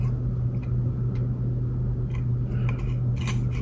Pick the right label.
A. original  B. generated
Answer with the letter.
A